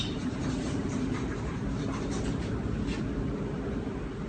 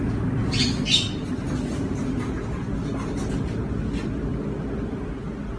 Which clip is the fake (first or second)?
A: first